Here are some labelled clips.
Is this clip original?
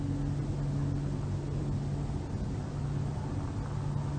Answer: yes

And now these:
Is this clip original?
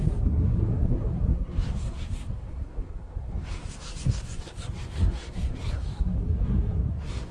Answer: no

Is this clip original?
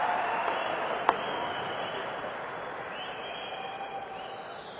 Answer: yes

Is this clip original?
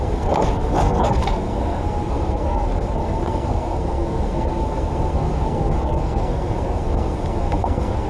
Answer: no